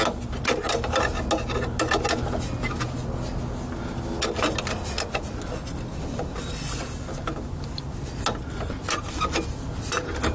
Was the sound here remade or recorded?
recorded